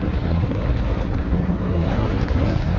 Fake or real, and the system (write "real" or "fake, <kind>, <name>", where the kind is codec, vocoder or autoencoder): fake, codec, SNAC